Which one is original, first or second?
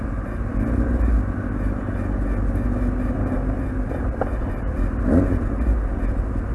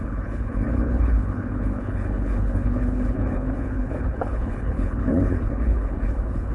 first